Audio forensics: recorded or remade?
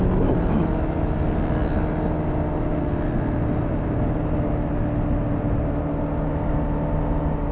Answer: recorded